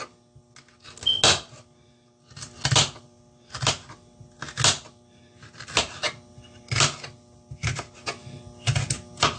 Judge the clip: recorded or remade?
recorded